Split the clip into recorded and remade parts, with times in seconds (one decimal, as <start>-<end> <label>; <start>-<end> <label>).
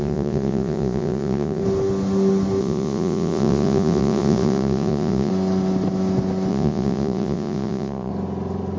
0.0-1.6 remade; 1.6-2.6 recorded; 2.6-5.3 remade; 5.3-6.5 recorded; 6.5-8.1 remade; 8.1-8.8 recorded